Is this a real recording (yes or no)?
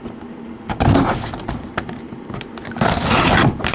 yes